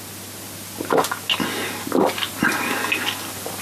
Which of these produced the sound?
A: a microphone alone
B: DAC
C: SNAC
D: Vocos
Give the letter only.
A